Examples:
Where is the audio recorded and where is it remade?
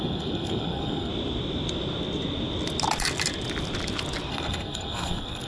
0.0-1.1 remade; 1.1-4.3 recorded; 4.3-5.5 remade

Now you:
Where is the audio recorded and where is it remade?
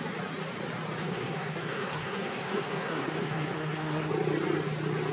0.0-1.0 recorded; 1.0-4.1 remade; 4.1-5.1 recorded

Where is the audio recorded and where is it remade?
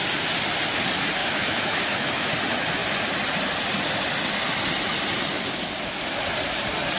0.0-1.2 recorded; 1.2-2.3 remade; 2.3-7.0 recorded